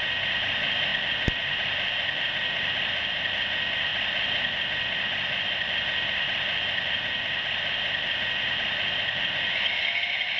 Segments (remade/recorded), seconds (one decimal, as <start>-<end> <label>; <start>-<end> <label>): 0.0-10.4 recorded